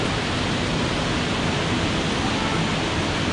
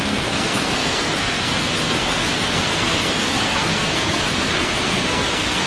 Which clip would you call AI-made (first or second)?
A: second